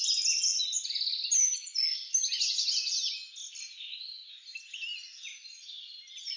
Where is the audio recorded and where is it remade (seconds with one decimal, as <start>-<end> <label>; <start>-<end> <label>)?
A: 0.0-6.4 recorded